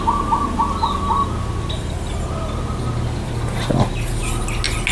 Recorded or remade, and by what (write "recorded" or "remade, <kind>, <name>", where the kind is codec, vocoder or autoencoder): recorded